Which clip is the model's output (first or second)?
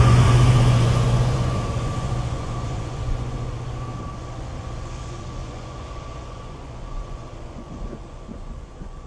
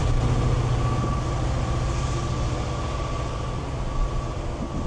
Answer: first